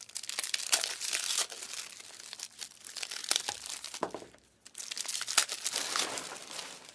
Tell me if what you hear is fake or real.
real